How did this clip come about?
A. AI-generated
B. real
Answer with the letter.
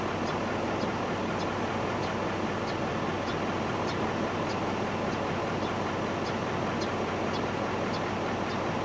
B